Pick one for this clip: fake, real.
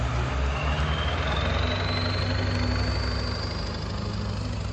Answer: real